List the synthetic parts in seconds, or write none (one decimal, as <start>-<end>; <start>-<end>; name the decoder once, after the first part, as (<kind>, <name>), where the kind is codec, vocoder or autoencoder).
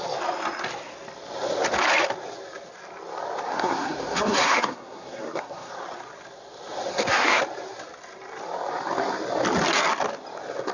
3.5-5.7 (codec, SNAC); 6.9-7.4